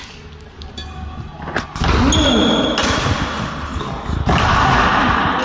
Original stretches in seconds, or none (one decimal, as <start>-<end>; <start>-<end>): 0.0-5.4